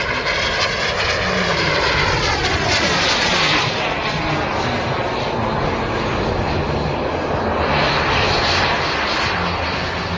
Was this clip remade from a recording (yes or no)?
no